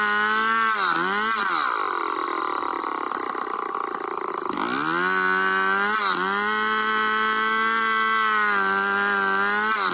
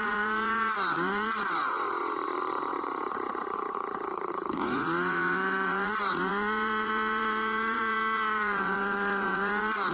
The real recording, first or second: first